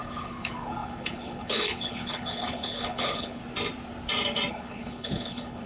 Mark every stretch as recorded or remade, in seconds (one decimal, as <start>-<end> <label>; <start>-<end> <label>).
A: 0.0-3.4 remade; 3.4-4.5 recorded; 4.5-5.7 remade